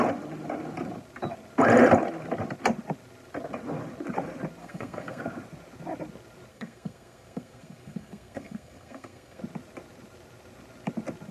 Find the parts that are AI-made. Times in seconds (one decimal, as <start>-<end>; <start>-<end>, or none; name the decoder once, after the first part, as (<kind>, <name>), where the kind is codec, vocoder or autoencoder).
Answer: 4.6-5.2 (codec, SNAC); 6.5-9.4